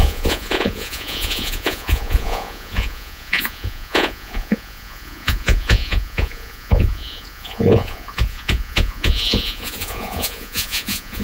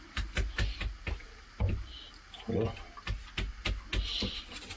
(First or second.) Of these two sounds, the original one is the second